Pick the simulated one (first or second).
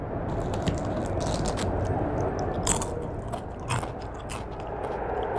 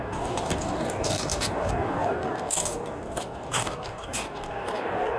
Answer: second